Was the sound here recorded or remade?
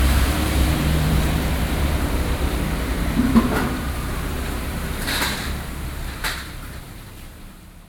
remade